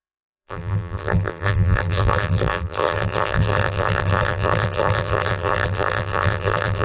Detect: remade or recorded remade